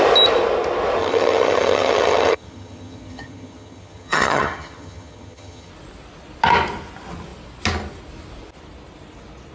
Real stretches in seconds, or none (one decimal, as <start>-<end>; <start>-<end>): 0.0-1.0; 5.7-9.5